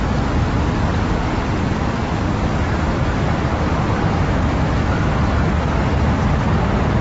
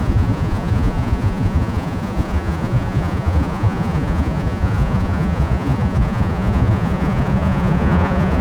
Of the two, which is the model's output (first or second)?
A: second